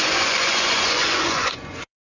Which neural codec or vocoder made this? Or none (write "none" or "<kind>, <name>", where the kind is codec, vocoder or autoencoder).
vocoder, Vocos